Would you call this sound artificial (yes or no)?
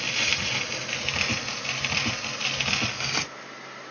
no